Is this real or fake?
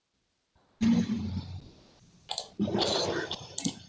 real